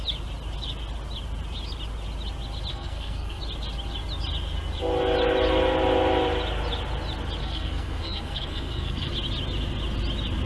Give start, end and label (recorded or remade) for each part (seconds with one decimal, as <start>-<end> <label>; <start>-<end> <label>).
0.0-2.7 recorded; 2.7-3.4 remade; 3.4-7.4 recorded; 7.4-9.1 remade; 9.1-10.5 recorded